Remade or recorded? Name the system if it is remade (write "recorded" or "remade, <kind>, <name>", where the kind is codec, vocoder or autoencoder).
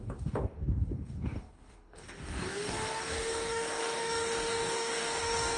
remade, codec, DAC